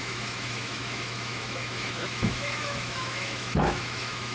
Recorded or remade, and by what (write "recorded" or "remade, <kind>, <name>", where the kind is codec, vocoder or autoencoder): remade, autoencoder, DAC-VAE